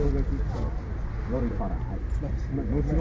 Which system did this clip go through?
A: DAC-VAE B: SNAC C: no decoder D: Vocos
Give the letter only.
C